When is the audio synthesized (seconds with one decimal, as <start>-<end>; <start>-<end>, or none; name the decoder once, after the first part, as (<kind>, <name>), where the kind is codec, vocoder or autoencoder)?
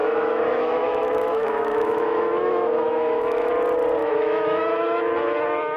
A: 0.0-3.5 (autoencoder, DAC-VAE); 4.0-5.1